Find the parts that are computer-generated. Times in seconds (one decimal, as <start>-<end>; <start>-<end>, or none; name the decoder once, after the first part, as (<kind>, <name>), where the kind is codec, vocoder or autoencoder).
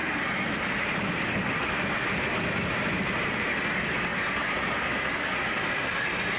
none